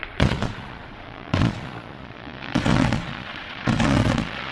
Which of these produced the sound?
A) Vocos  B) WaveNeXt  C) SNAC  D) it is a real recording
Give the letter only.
A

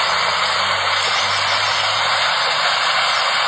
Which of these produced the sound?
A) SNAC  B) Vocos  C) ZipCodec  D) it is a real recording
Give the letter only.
D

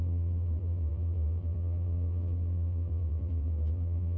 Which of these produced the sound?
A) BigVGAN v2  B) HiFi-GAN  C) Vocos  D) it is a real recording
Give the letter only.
A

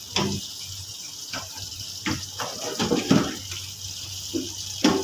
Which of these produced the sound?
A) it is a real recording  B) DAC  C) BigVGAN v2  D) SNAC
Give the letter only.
A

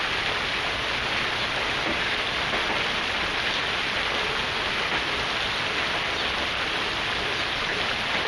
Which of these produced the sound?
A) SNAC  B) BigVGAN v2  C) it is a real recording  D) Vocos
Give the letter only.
C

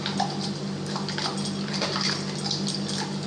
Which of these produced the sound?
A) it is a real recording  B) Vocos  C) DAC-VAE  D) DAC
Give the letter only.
A